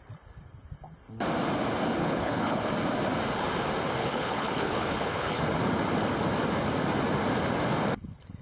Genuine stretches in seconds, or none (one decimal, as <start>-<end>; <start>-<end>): 0.0-2.0; 2.7-4.0; 5.4-8.4